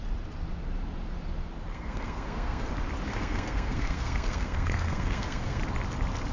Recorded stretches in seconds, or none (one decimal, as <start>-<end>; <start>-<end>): 0.0-1.7; 2.7-3.1; 5.6-6.3